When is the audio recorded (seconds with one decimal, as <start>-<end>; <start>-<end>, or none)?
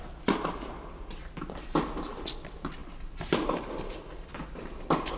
0.0-5.2